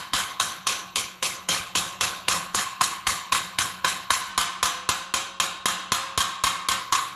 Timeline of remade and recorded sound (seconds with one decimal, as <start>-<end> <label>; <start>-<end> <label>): 0.0-4.3 remade; 4.3-6.8 recorded; 6.8-7.2 remade